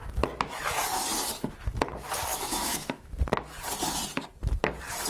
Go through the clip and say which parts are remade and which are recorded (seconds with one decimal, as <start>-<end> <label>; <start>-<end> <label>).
0.0-2.3 recorded; 2.3-3.1 remade; 3.1-5.1 recorded